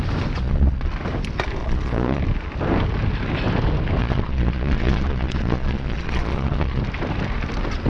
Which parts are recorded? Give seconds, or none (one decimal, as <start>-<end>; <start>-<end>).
0.0-0.4; 0.9-1.6; 2.2-4.0; 6.8-7.9